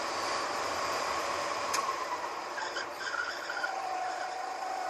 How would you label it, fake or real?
fake